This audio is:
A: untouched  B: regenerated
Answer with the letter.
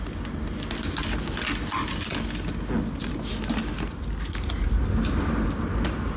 A